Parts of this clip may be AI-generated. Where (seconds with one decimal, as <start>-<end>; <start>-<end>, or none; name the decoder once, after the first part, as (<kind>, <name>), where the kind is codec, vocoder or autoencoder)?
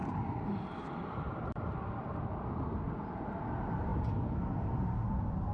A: 0.0-3.3 (vocoder, BigVGAN v2)